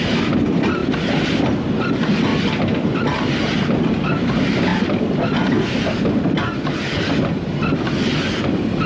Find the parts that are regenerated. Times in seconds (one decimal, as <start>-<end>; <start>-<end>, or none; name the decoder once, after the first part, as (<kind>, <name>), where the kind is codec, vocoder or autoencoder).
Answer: 2.3-3.4 (vocoder, BigVGAN v2); 4.7-5.2